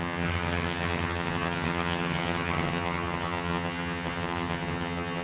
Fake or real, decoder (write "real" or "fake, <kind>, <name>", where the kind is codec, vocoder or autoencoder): fake, vocoder, HiFi-GAN